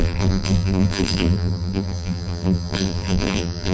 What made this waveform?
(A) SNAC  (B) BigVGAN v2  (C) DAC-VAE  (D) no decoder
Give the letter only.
B